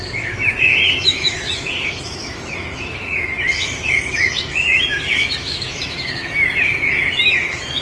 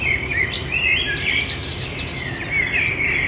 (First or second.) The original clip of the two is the second